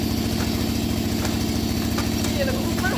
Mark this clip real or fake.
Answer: real